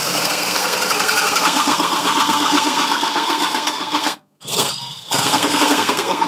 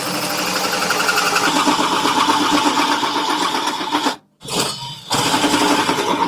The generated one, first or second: first